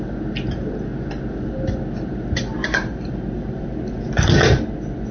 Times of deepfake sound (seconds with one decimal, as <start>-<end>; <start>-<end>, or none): 2.8-3.8